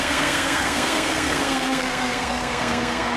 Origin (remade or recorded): remade